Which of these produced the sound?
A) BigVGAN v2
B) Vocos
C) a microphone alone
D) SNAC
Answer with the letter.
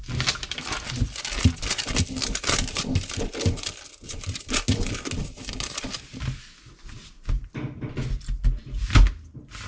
C